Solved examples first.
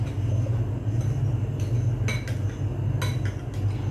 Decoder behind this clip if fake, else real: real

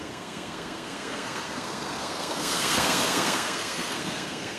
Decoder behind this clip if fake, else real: fake, codec, SNAC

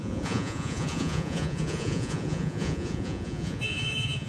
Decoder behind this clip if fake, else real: fake, vocoder, Vocos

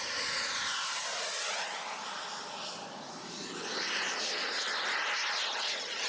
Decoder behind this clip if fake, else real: real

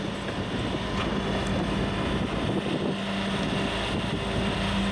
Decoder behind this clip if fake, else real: real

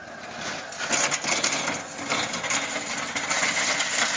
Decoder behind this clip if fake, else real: real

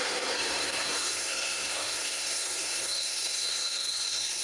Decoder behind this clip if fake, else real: fake, codec, SNAC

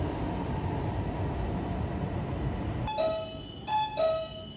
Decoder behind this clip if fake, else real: real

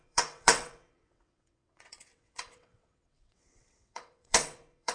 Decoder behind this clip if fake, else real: fake, vocoder, WaveNeXt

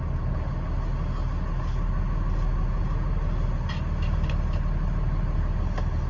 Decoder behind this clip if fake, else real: real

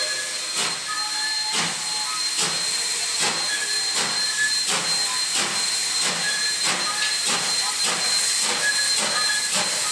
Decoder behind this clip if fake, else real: real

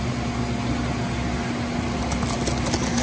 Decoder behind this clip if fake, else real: real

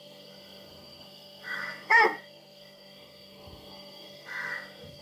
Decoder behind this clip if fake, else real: fake, codec, SNAC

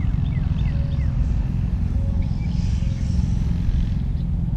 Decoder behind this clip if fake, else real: real